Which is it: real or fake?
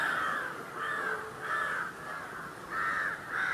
real